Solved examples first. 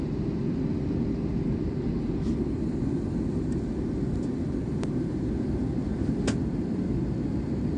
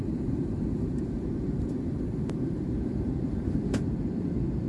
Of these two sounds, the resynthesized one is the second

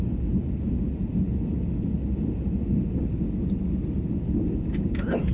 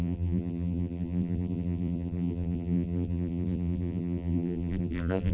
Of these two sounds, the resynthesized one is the second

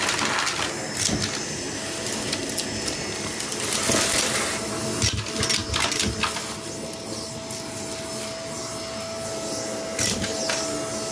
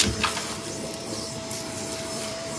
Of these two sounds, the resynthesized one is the second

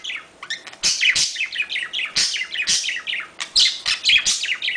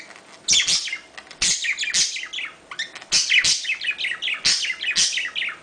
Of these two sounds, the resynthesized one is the first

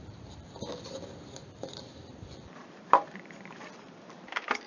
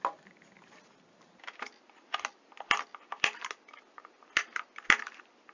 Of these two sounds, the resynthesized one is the first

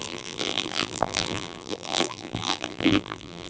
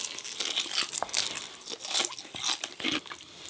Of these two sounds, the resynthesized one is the first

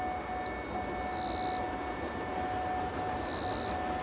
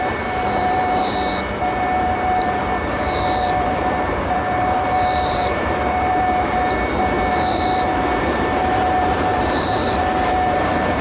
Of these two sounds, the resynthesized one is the second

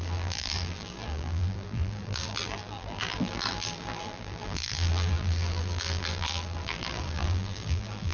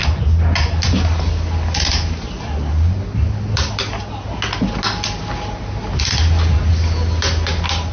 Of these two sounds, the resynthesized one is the first